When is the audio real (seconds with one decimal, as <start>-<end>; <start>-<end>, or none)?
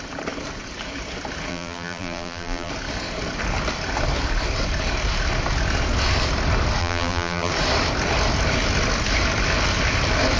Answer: 0.0-1.5; 2.7-6.8; 7.5-10.4